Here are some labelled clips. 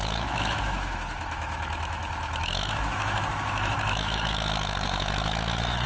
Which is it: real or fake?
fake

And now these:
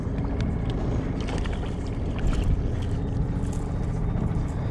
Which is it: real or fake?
real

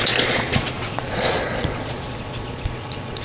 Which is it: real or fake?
fake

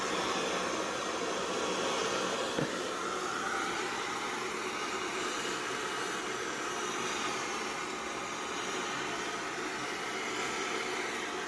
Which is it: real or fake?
real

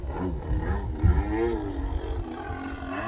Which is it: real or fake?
real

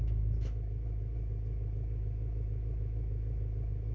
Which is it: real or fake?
fake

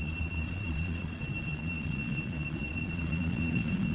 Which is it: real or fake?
fake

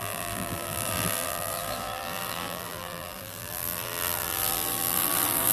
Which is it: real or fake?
fake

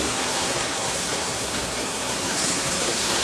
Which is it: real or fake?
fake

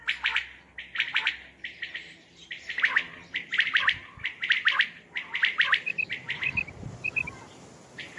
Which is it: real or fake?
real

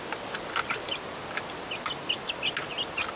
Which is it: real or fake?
real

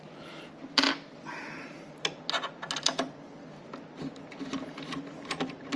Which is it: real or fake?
real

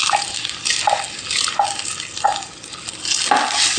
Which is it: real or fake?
real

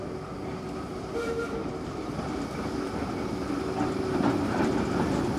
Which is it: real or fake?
fake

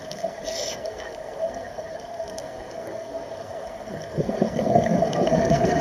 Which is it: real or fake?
fake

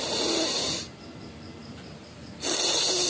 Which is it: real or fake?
real